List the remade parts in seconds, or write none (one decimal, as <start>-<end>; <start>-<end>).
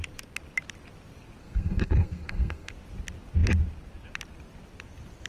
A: 1.4-2.7